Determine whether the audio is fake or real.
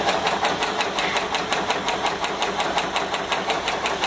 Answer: real